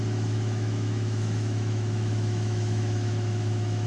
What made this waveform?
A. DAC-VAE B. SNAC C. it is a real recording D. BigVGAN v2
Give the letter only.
A